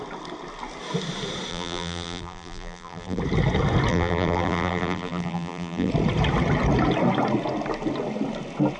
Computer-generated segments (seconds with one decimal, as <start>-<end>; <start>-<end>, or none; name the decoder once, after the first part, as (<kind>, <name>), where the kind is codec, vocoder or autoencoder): 1.5-3.2 (vocoder, BigVGAN v2); 3.9-5.9